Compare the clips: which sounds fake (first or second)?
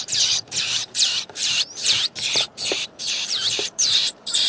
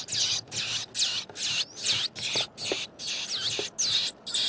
first